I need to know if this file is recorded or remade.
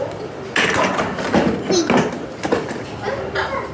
recorded